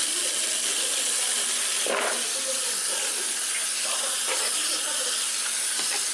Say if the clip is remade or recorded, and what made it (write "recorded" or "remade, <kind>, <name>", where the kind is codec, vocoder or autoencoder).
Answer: recorded